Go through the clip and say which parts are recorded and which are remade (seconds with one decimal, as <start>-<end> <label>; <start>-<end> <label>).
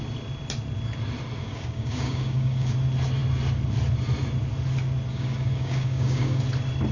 0.0-1.4 recorded; 1.4-2.7 remade; 2.7-5.1 recorded; 5.1-6.4 remade; 6.4-6.9 recorded